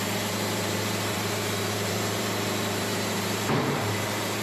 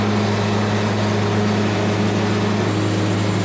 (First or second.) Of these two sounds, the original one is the second